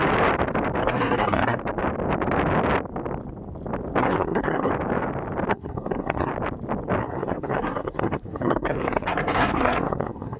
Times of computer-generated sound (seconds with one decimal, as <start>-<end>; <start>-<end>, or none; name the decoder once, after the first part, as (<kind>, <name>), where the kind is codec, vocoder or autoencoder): 0.8-1.6 (codec, SNAC); 4.0-4.7; 5.5-6.3; 7.0-10.4